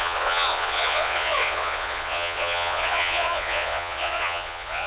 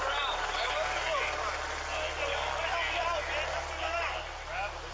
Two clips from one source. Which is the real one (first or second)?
second